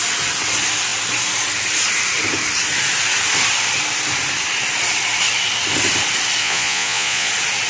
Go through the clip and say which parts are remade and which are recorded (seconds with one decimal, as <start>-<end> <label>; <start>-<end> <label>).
0.0-6.4 recorded; 6.4-7.3 remade; 7.3-7.7 recorded